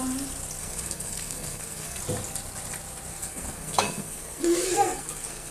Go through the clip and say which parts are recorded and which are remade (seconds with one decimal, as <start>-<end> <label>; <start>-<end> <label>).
0.0-0.6 recorded; 0.6-2.0 remade; 2.0-3.1 recorded; 3.1-5.5 remade